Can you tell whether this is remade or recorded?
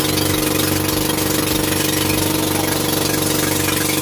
recorded